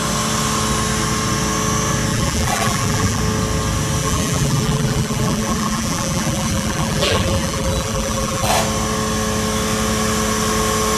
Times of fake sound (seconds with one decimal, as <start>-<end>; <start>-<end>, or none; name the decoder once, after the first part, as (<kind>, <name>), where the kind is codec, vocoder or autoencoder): 2.1-3.2 (vocoder, BigVGAN v2); 4.0-8.5